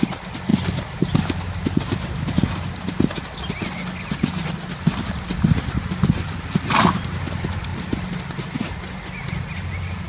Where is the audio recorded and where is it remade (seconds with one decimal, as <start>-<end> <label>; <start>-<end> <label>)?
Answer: 0.0-10.1 recorded